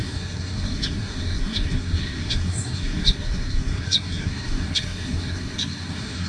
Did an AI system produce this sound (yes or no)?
yes